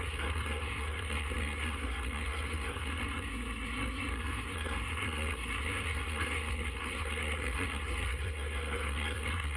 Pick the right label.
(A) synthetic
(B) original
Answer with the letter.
A